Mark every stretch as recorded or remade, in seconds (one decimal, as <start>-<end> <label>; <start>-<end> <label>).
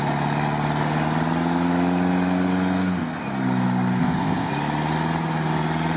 0.0-4.0 recorded; 4.0-4.5 remade; 4.5-6.0 recorded